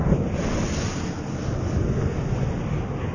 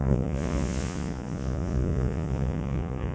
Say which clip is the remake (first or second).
second